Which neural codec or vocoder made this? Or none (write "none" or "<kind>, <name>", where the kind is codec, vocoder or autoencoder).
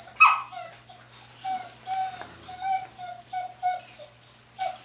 none